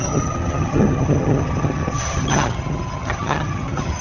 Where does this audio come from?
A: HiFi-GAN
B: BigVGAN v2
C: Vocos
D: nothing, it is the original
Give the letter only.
A